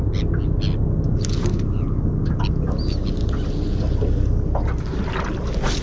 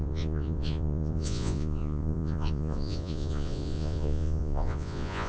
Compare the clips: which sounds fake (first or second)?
second